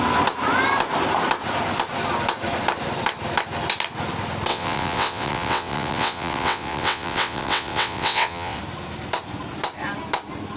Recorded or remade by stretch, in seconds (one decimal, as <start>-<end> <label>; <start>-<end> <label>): 0.0-4.5 recorded; 4.5-8.6 remade; 8.6-10.6 recorded